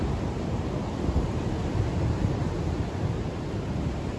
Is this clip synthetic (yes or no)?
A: no